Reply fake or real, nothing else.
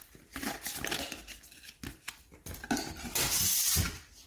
real